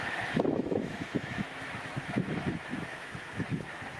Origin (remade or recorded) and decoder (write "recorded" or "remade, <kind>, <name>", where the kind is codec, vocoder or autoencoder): remade, autoencoder, DAC-VAE